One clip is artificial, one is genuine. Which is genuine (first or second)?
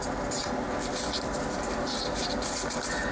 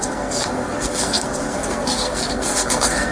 first